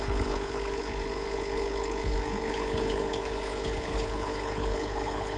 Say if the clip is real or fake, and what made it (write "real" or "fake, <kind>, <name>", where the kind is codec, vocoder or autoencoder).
fake, codec, HILCodec